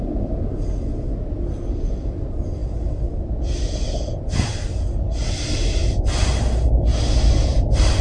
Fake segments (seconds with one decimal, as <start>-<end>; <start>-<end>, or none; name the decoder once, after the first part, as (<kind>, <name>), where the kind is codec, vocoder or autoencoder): none